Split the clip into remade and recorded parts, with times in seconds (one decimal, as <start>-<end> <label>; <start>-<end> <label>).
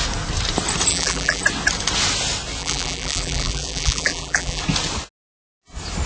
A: 0.0-0.9 recorded; 0.9-1.4 remade; 1.4-2.6 recorded; 2.6-4.6 remade; 4.6-6.1 recorded